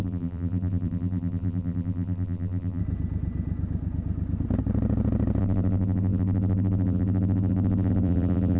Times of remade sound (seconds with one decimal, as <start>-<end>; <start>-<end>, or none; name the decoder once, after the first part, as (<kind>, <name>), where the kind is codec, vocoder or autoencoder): 0.0-2.8 (vocoder, BigVGAN v2); 5.4-8.6